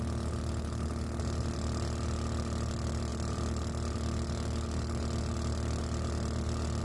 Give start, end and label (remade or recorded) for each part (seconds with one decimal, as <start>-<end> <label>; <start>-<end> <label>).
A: 0.0-6.8 recorded